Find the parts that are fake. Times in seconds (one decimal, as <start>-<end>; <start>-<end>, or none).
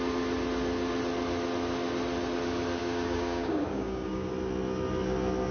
2.8-4.3